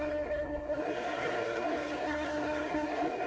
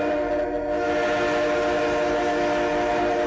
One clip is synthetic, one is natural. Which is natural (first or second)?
second